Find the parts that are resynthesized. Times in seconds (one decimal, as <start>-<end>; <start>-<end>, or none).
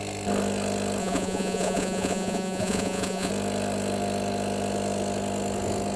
1.0-3.3